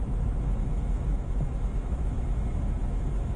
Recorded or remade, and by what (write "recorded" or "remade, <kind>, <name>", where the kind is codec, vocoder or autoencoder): remade, autoencoder, DAC-VAE